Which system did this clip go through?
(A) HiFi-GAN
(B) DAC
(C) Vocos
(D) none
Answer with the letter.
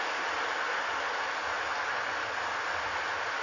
D